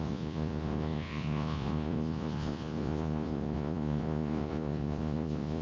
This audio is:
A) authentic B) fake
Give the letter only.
B